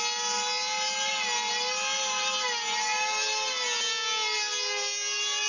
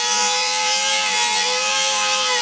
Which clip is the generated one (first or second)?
second